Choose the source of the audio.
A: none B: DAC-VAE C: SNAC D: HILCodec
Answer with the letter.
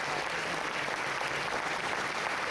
A